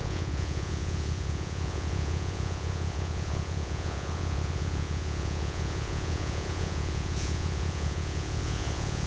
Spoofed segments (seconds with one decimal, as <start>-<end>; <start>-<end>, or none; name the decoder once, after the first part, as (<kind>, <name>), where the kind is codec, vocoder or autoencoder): 0.0-9.1 (vocoder, Vocos)